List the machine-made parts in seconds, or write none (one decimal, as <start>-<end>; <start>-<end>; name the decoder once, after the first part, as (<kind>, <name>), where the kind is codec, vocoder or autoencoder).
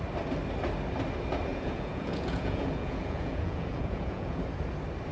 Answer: 1.5-4.4 (vocoder, Vocos)